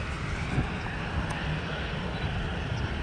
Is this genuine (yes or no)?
yes